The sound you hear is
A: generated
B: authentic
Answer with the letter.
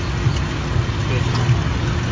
B